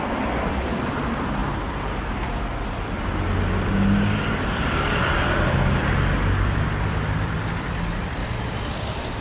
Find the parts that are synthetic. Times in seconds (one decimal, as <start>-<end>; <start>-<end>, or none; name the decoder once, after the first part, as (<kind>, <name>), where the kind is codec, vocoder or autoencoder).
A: 0.0-1.4 (vocoder, BigVGAN v2); 4.4-8.2